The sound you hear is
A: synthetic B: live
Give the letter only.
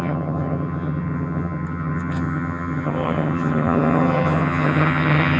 A